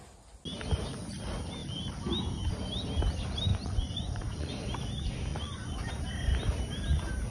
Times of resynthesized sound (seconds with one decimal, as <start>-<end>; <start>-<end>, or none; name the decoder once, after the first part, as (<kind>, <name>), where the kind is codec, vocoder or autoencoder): 3.5-4.5 (vocoder, Vocos); 5.3-5.9